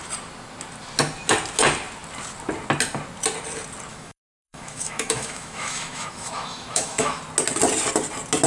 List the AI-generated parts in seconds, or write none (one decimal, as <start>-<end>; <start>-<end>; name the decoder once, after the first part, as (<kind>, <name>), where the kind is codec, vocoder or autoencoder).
3.9-7.2 (autoencoder, DAC-VAE)